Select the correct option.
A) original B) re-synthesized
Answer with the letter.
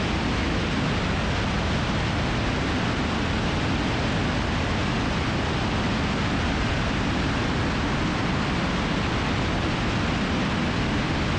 A